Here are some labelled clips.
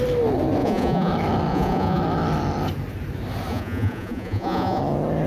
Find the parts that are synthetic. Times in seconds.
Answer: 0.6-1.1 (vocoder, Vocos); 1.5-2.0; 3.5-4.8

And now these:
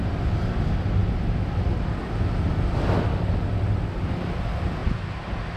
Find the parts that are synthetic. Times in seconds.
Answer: none

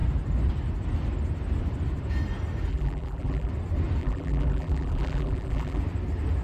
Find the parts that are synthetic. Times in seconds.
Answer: 2.7-3.5 (vocoder, BigVGAN v2); 4.0-5.8

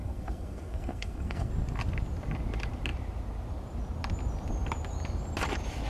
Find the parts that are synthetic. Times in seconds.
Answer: 0.0-1.5 (codec, SNAC)